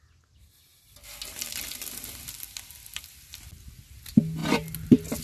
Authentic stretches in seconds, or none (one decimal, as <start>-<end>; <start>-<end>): 0.0-5.2